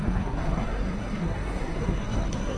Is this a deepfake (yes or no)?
yes